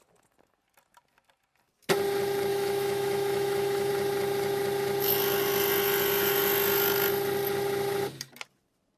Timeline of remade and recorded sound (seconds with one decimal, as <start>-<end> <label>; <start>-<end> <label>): 0.0-2.5 recorded; 2.5-3.9 remade; 3.9-9.0 recorded